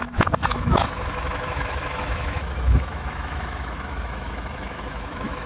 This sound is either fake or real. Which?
fake